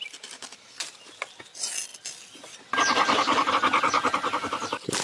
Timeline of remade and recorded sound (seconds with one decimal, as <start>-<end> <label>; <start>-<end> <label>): 0.0-5.0 recorded